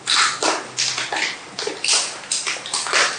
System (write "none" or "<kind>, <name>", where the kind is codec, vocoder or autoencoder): none